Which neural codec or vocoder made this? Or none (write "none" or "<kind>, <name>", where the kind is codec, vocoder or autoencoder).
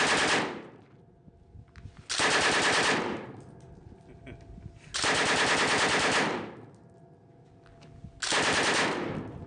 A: none